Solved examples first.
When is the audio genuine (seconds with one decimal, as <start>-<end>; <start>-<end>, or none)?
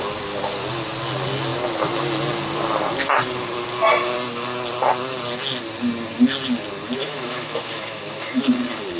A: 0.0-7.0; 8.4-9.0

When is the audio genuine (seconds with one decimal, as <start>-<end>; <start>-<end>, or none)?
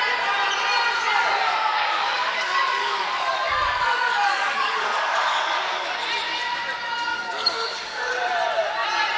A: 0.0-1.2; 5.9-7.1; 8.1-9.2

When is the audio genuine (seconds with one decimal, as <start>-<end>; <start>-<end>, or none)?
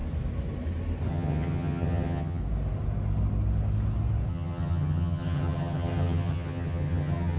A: 0.0-1.1; 2.4-4.3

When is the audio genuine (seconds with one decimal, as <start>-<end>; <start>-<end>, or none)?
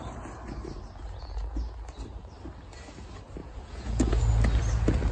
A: 0.0-3.4; 4.2-5.1